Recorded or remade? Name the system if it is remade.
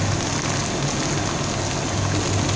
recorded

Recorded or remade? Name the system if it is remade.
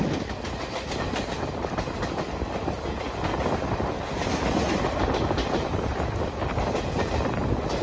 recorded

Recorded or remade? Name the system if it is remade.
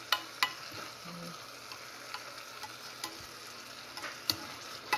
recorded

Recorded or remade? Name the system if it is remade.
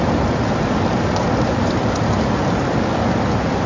recorded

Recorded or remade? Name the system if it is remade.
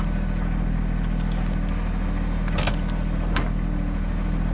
recorded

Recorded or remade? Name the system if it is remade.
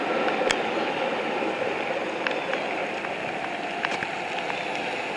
recorded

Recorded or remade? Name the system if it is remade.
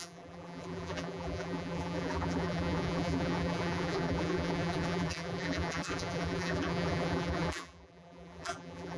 remade, vocoder, BigVGAN v2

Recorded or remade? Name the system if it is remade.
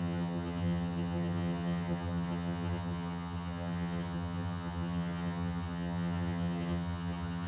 remade, vocoder, HiFi-GAN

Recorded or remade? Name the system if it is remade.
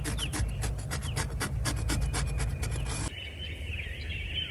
recorded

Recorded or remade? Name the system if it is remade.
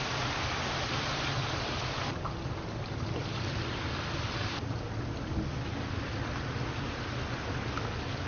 recorded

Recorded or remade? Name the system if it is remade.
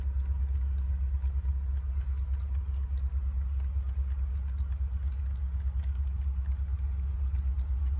recorded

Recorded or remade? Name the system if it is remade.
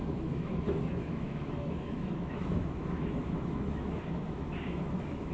remade, autoencoder, DAC-VAE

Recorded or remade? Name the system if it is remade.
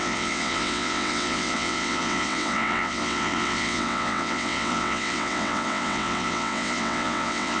remade, vocoder, WaveNeXt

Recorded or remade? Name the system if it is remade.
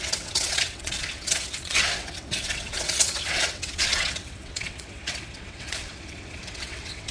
remade, vocoder, WaveNeXt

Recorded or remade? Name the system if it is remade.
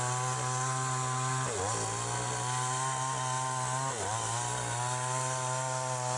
recorded